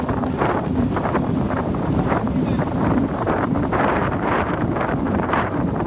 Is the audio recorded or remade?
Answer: remade